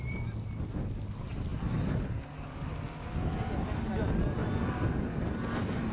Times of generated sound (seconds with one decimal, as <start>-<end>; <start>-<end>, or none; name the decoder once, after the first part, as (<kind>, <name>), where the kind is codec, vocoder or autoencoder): none